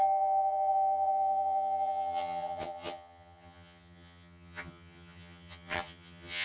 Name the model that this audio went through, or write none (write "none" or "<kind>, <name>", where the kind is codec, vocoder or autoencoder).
vocoder, HiFi-GAN